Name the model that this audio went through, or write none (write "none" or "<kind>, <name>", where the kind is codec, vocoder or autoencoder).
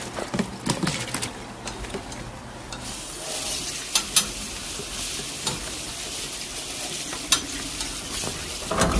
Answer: none